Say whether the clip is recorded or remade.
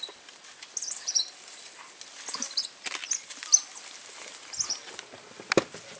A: recorded